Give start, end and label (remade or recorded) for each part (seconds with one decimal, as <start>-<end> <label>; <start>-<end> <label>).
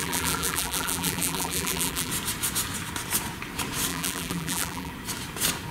0.0-2.1 remade; 2.1-3.9 recorded; 3.9-4.9 remade; 4.9-5.7 recorded